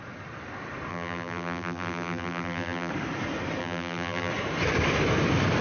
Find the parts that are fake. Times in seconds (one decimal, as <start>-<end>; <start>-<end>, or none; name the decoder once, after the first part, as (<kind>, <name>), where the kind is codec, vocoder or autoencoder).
0.9-2.9 (vocoder, BigVGAN v2); 3.6-4.3